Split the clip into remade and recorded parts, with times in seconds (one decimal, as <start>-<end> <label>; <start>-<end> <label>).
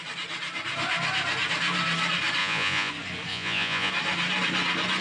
0.0-2.4 recorded; 2.4-2.9 remade; 2.9-3.3 recorded; 3.3-3.9 remade; 3.9-5.0 recorded